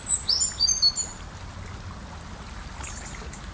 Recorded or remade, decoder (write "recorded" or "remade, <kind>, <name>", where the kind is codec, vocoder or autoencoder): recorded